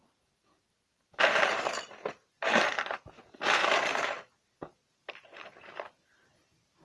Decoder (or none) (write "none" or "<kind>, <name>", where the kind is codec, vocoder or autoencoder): vocoder, BigVGAN v2